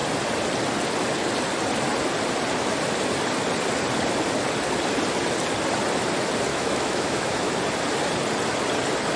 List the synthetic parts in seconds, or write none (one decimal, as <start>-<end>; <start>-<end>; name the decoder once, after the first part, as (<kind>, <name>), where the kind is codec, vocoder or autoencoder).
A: 6.5-7.6 (autoencoder, DAC-VAE)